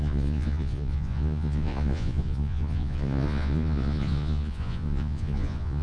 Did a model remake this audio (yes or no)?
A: yes